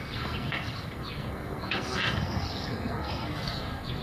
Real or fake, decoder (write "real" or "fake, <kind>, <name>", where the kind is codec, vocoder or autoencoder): fake, codec, SNAC